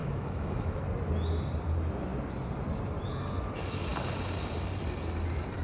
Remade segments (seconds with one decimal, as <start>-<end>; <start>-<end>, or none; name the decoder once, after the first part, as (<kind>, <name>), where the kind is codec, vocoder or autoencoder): 0.0-0.8 (autoencoder, DAC-VAE)